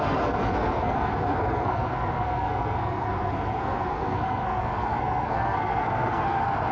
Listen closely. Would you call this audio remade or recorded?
remade